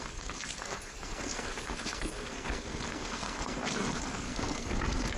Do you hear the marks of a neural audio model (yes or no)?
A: yes